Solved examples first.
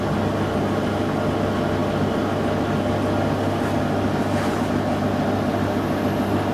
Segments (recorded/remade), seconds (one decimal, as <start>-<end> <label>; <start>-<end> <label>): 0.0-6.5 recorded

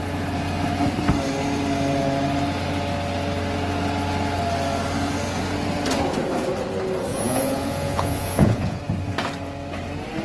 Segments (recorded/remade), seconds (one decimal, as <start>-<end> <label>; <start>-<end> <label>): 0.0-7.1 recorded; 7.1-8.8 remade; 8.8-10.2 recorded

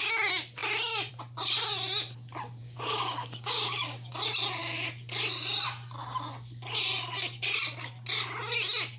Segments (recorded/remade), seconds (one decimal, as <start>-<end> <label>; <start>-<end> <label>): 0.0-2.6 recorded; 2.6-4.1 remade; 4.1-9.0 recorded